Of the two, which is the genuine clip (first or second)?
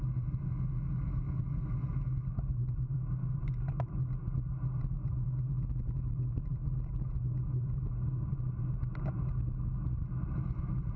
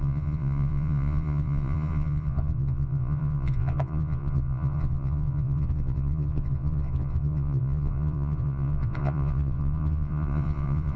first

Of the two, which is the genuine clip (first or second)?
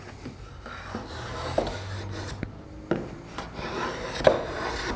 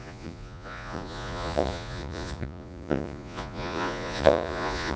first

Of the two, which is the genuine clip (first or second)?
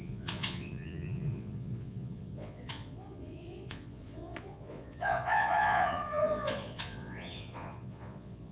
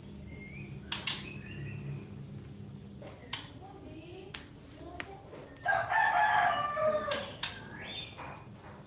second